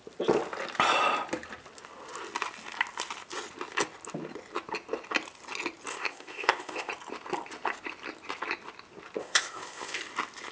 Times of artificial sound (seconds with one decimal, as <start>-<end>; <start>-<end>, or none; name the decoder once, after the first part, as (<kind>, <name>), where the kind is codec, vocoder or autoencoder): 5.9-6.9 (codec, ZipCodec); 9.2-10.0